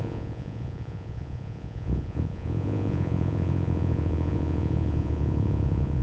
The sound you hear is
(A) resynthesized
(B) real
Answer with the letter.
A